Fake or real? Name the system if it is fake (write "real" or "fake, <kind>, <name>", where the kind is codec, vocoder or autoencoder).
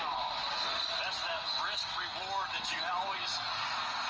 real